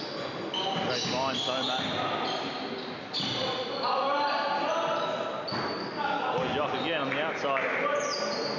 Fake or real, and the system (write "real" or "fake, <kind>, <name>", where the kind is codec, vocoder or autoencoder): real